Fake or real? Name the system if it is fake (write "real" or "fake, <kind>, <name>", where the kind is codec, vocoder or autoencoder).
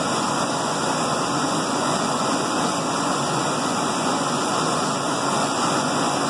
fake, vocoder, Vocos